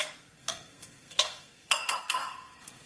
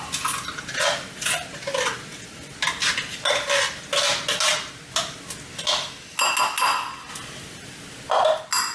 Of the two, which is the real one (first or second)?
second